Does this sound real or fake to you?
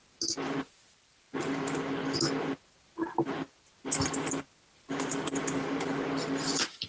real